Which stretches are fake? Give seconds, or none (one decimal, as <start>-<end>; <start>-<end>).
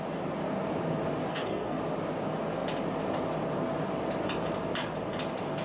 1.3-1.8